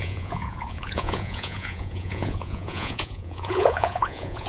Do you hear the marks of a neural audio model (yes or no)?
yes